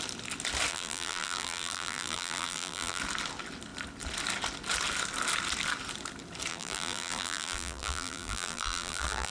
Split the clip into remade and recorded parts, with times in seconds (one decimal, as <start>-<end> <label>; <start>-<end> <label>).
0.0-0.7 recorded; 0.7-3.0 remade; 3.0-6.5 recorded; 6.5-9.3 remade